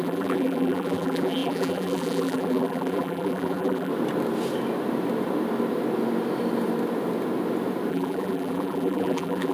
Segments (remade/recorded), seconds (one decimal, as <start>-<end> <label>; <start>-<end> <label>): 0.0-3.9 remade; 3.9-7.9 recorded; 7.9-9.5 remade